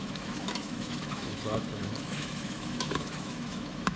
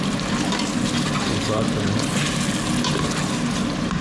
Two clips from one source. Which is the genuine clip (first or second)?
second